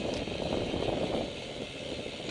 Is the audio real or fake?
real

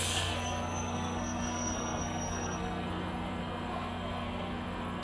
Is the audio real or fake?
fake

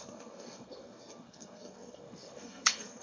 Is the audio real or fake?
fake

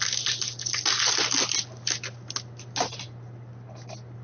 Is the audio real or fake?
real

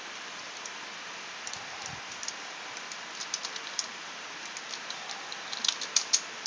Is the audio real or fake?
real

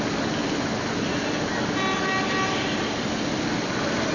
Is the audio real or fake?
real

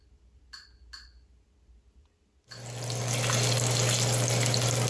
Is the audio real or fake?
real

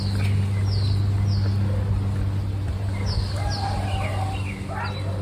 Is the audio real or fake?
real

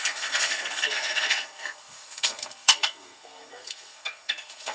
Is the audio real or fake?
fake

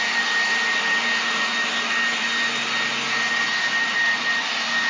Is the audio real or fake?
real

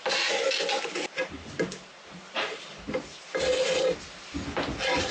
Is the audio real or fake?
real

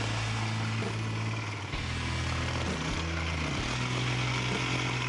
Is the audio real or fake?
real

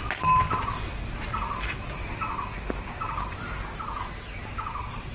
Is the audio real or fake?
real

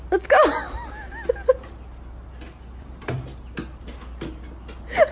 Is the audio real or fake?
real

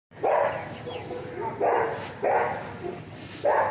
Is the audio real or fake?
real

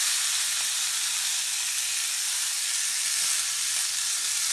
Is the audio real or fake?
real